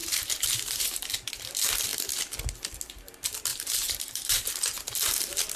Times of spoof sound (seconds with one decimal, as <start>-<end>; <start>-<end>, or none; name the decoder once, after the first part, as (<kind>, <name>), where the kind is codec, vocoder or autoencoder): 0.0-1.3 (vocoder, BigVGAN v2); 3.5-4.5